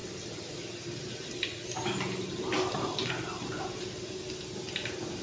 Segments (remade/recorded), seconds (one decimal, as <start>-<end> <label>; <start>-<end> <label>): 0.0-5.2 recorded